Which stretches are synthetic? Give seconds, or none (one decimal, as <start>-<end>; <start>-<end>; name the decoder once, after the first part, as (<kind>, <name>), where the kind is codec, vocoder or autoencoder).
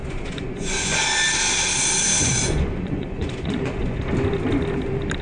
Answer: 0.0-1.2 (vocoder, Vocos); 2.3-4.0